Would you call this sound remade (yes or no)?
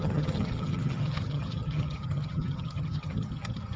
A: yes